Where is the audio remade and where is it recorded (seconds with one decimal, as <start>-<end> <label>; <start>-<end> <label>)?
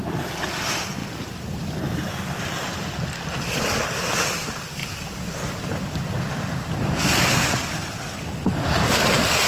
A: 0.0-9.5 recorded